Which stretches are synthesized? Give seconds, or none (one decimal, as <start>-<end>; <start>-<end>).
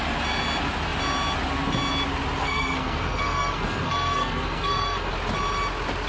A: 2.4-5.1